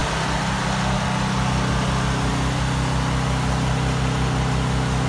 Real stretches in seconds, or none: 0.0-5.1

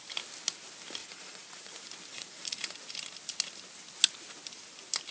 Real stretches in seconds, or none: 0.0-1.0; 1.7-2.1; 2.6-5.1

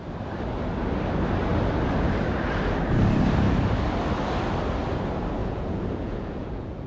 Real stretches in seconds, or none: 0.0-5.4

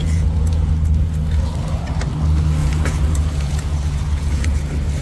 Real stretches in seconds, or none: 0.7-2.6; 4.6-5.0

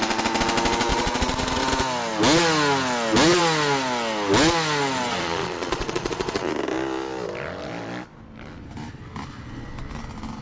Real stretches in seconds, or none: 0.0-0.9; 1.6-5.1; 6.5-10.4

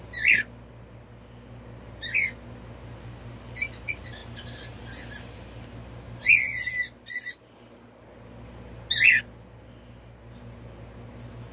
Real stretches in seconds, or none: 0.0-11.5

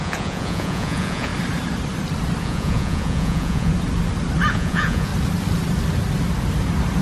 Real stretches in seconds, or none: 1.3-2.4; 3.7-4.5; 5.1-7.0